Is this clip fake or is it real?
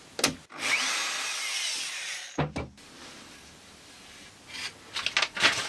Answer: real